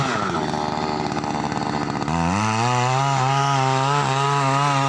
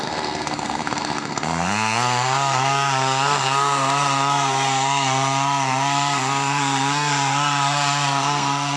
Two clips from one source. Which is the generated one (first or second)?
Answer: second